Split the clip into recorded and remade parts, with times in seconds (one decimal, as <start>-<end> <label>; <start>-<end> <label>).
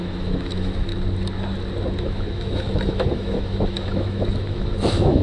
0.0-0.9 remade; 0.9-2.0 recorded; 2.0-5.2 remade